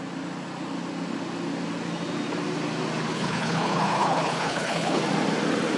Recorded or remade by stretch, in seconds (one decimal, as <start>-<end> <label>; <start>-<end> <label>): 0.0-3.1 recorded; 3.1-5.0 remade; 5.0-5.8 recorded